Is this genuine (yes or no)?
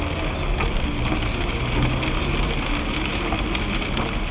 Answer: yes